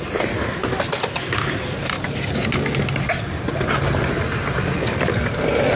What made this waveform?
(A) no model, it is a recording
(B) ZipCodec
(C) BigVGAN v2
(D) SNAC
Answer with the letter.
A